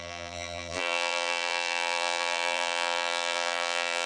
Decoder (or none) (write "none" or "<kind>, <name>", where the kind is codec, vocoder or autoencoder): vocoder, BigVGAN v2